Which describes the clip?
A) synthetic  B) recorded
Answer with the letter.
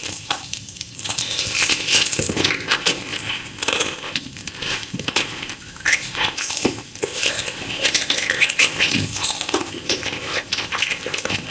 A